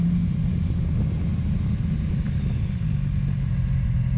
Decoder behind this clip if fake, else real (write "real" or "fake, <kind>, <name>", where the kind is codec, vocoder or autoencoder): real